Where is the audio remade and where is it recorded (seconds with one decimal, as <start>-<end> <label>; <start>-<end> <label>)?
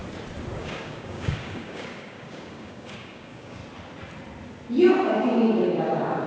0.0-0.6 recorded; 0.6-3.6 remade; 3.6-4.9 recorded; 4.9-6.3 remade